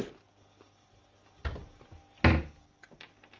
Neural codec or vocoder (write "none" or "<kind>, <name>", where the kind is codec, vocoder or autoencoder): none